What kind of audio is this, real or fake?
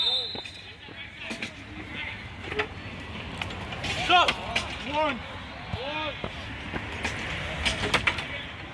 real